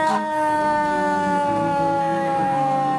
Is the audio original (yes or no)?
no